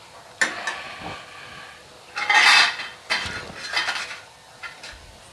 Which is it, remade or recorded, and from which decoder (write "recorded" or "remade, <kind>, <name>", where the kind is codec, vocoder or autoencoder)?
recorded